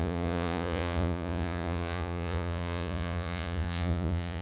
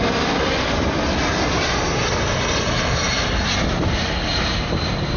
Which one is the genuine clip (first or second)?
second